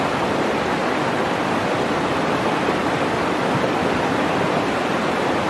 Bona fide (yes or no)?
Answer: no